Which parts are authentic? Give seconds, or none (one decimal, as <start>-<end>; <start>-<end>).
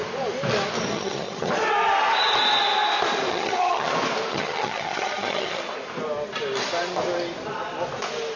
0.0-0.9; 1.5-3.3; 3.9-4.3; 5.6-8.4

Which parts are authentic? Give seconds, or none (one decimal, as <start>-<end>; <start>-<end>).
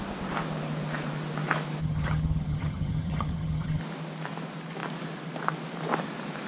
0.0-1.8; 3.8-6.5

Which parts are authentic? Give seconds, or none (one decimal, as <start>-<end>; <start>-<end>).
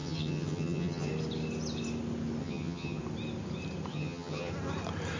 1.1-2.4; 3.0-3.9; 4.5-5.2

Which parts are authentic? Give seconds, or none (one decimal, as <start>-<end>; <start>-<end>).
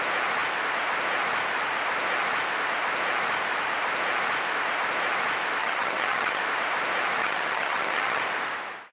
0.0-5.6; 6.4-7.2; 8.2-8.9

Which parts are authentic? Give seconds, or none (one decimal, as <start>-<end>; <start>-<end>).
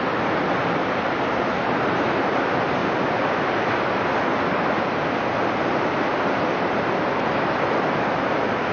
0.0-8.7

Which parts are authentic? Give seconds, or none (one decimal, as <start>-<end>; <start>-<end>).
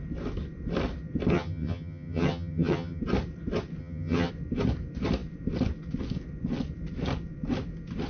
0.0-1.3; 3.0-3.8; 4.3-8.1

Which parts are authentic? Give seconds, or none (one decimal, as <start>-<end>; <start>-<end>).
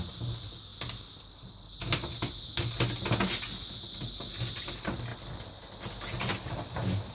0.0-7.1